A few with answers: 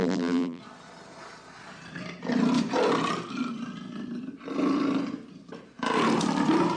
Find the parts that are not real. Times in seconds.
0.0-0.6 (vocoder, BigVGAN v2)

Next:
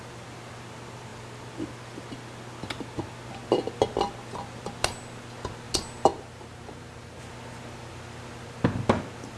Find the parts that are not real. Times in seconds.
6.1-7.2 (vocoder, BigVGAN v2)

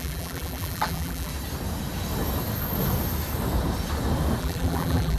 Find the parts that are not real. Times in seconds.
0.0-1.3 (vocoder, BigVGAN v2); 4.4-5.2

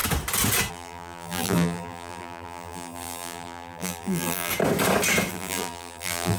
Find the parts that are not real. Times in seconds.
0.7-4.5 (vocoder, BigVGAN v2); 5.3-6.4

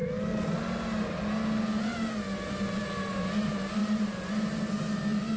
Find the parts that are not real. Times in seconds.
3.8-4.7 (vocoder, BigVGAN v2)

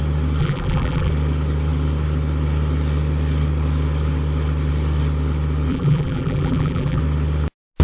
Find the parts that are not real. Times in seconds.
0.4-1.1 (vocoder, BigVGAN v2); 5.7-7.0

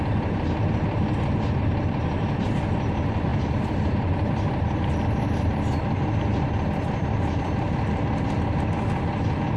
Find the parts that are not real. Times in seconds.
3.3-8.6 (vocoder, BigVGAN v2)

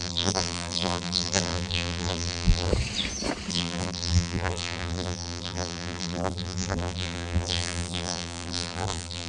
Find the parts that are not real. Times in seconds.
0.0-2.7 (vocoder, BigVGAN v2); 3.5-9.3